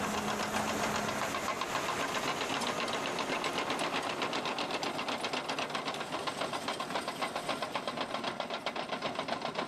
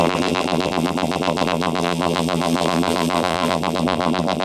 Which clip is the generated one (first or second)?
second